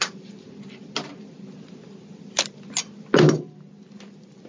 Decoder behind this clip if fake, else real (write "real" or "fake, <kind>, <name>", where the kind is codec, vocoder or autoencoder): real